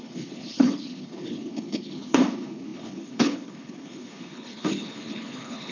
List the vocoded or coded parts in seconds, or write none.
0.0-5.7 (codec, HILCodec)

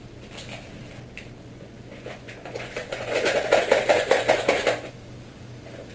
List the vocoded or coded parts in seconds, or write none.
1.4-4.9 (vocoder, Vocos)

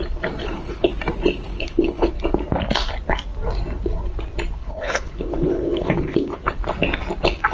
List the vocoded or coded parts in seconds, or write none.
0.4-0.9 (codec, HILCodec); 1.5-2.1; 4.6-6.4

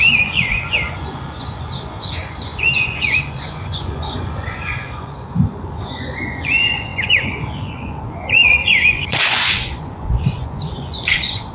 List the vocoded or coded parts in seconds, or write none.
0.0-11.5 (vocoder, Vocos)

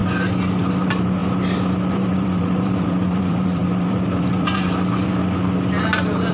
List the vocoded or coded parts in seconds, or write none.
0.6-1.2 (vocoder, BigVGAN v2); 1.9-5.2

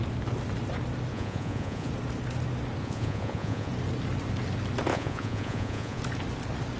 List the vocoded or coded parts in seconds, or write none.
1.1-1.9 (vocoder, Vocos); 2.8-3.7; 4.9-6.0

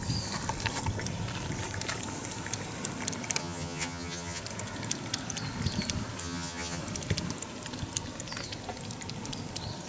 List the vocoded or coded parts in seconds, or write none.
3.4-4.4 (vocoder, HiFi-GAN); 6.2-6.8

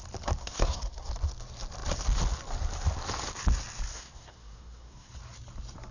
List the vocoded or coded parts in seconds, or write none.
0.4-1.1 (codec, SNAC); 3.9-5.1